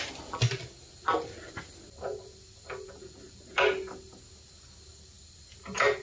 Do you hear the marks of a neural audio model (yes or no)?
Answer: no